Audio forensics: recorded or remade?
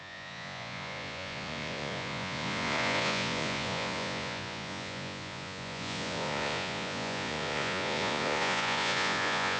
remade